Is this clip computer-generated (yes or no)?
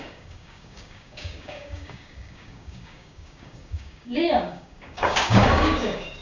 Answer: yes